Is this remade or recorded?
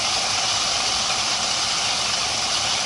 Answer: recorded